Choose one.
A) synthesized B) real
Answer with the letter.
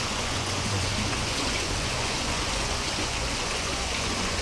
A